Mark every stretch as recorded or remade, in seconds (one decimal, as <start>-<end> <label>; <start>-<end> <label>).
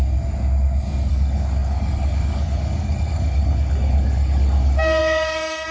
0.0-1.1 recorded; 1.1-5.7 remade